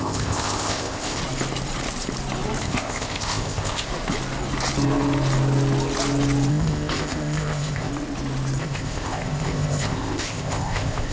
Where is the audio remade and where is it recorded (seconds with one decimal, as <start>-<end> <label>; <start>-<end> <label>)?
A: 0.0-1.2 remade; 1.2-2.6 recorded; 2.6-3.9 remade; 3.9-6.5 recorded; 6.5-7.9 remade; 7.9-8.6 recorded; 8.6-11.1 remade